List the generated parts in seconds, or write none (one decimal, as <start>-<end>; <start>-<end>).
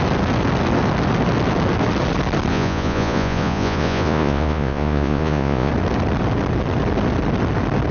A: 2.5-5.7